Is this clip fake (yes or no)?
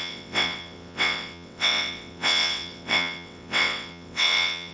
yes